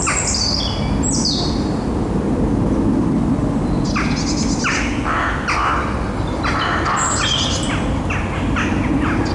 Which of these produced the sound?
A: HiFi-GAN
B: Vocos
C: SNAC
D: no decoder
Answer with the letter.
D